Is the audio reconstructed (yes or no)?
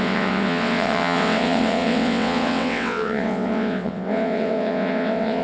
yes